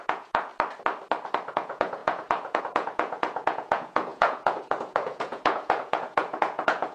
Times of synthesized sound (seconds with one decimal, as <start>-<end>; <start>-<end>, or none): 0.0-0.5; 1.5-6.9

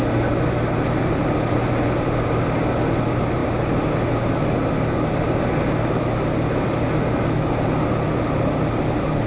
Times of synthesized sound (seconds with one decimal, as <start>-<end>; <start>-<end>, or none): none